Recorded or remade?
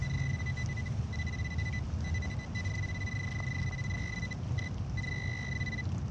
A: recorded